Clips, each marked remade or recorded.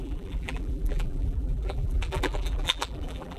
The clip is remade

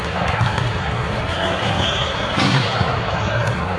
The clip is remade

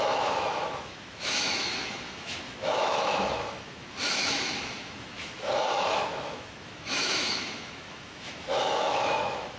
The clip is remade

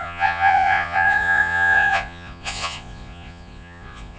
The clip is remade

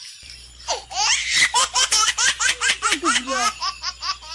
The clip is remade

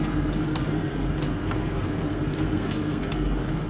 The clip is remade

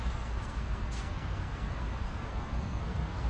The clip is remade